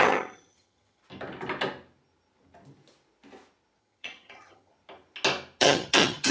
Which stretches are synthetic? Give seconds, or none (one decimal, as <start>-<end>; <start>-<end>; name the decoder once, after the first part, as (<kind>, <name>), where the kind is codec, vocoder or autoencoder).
0.0-1.0 (vocoder, HiFi-GAN); 3.8-4.7; 5.6-6.3